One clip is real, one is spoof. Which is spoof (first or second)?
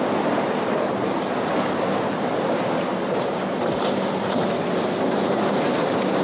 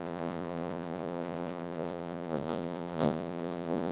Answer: second